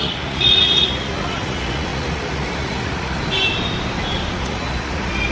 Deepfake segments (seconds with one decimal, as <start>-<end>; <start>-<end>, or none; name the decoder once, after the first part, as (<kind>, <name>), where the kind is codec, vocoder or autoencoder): 0.0-3.2 (vocoder, Vocos); 4.3-5.3